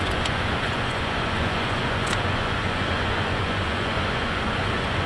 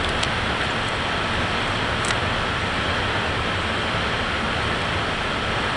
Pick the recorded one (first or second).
second